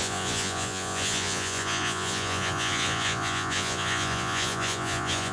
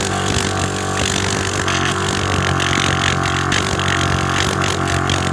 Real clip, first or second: second